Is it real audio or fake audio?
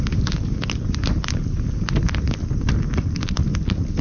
real